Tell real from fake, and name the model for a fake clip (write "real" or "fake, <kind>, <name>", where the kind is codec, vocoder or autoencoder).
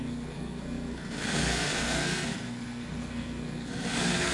fake, codec, SNAC